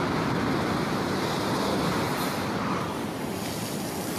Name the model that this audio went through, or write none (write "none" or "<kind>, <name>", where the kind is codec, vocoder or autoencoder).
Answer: none